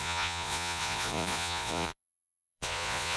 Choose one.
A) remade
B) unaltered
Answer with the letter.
A